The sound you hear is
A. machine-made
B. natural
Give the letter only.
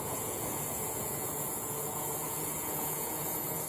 A